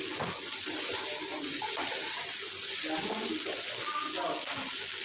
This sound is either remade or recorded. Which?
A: recorded